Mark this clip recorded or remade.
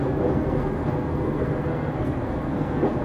remade